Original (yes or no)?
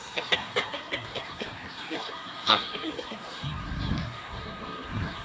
no